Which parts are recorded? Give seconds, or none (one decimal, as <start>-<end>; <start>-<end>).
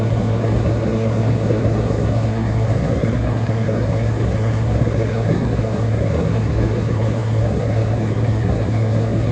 none